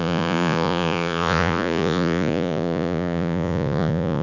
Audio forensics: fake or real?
fake